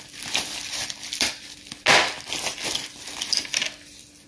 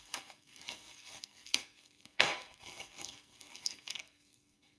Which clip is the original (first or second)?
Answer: first